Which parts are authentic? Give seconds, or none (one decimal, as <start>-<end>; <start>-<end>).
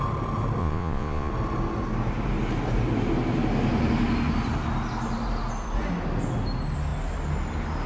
0.0-0.6; 1.3-7.9